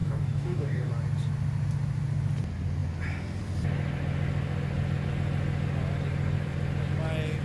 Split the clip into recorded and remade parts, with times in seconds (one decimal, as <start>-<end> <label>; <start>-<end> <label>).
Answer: 0.0-0.9 remade; 0.9-7.4 recorded